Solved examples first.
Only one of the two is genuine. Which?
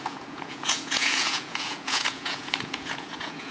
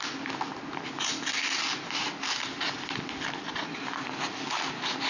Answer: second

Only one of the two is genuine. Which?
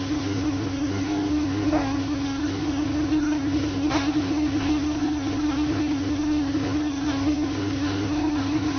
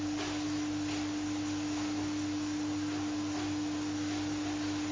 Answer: second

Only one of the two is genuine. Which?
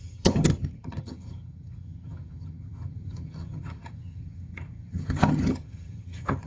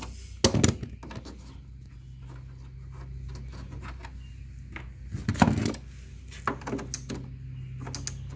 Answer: second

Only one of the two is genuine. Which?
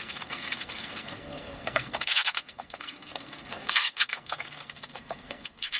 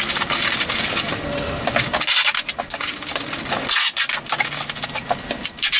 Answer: second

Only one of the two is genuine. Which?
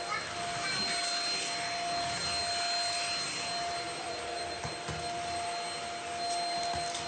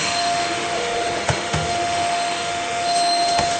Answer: first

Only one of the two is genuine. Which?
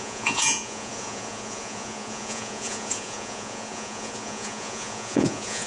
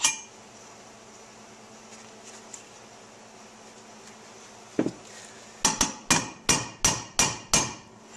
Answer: second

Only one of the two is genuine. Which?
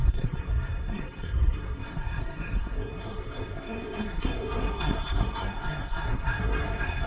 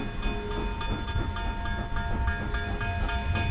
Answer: second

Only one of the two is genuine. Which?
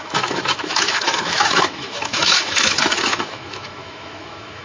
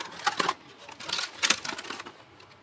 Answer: second